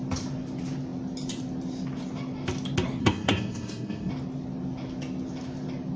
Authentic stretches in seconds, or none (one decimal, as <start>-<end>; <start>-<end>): 0.0-3.0; 4.1-6.0